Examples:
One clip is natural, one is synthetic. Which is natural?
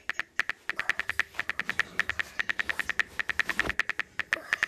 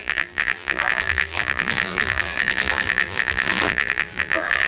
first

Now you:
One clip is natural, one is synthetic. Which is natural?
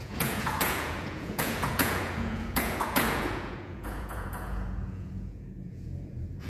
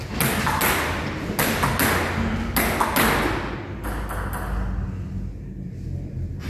second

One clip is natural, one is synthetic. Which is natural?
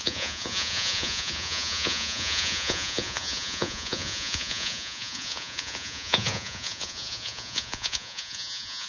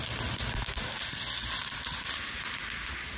second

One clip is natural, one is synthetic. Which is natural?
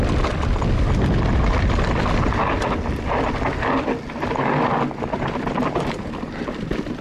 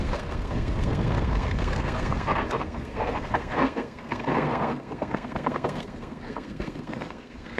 first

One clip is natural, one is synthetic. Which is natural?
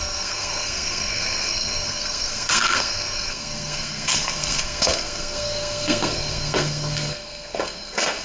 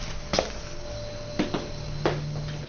second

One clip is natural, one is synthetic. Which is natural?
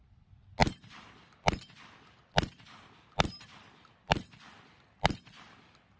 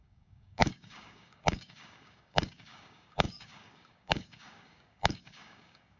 first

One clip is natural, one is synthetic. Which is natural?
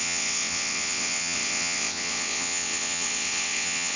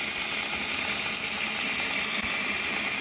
second